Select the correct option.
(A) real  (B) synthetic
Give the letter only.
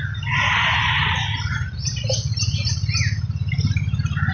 A